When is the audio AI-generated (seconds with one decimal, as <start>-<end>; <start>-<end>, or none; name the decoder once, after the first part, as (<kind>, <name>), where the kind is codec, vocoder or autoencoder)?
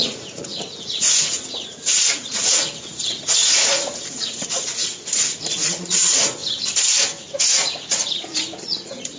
0.0-6.4 (vocoder, Vocos); 7.2-9.2